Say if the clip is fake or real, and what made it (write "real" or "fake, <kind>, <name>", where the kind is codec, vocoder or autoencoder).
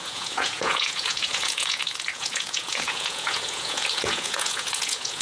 fake, vocoder, Vocos